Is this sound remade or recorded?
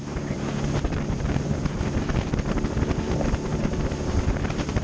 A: recorded